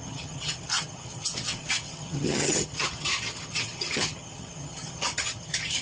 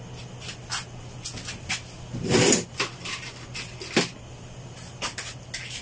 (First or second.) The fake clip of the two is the first